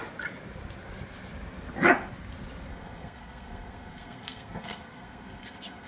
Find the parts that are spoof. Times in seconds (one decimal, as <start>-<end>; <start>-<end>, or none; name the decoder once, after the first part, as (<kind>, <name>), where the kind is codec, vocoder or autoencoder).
2.7-5.9 (codec, SNAC)